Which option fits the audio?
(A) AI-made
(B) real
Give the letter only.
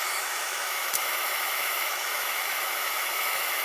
A